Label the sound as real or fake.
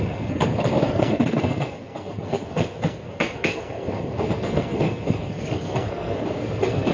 fake